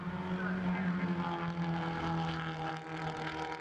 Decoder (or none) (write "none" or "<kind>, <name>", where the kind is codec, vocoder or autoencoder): none